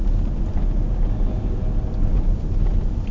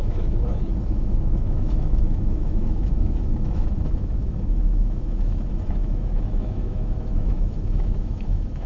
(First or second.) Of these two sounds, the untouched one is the first